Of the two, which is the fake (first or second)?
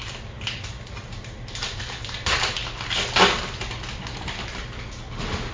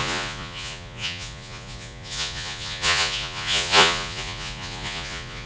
second